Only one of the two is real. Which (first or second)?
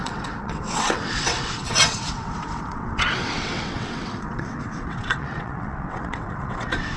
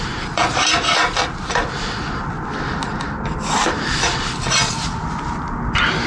second